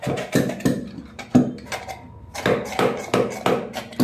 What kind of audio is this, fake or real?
real